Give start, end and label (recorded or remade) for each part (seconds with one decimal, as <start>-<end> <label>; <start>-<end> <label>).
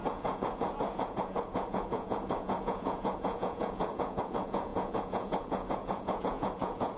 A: 0.0-7.0 remade